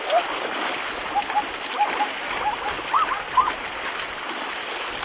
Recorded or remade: recorded